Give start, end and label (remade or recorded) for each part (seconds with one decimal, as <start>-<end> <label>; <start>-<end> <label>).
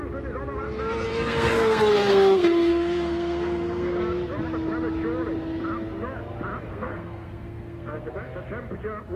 0.0-1.1 recorded; 1.1-4.0 remade; 4.0-6.7 recorded; 6.7-8.1 remade; 8.1-9.2 recorded